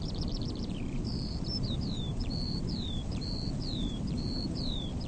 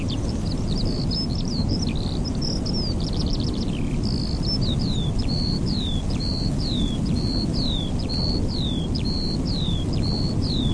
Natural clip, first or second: second